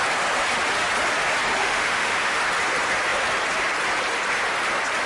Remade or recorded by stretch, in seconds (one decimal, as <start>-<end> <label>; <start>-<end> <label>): 0.0-1.6 recorded; 1.6-2.4 remade; 2.4-5.1 recorded